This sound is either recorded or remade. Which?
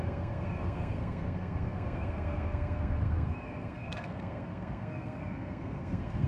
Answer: remade